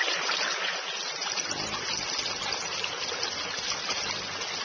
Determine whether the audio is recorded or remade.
recorded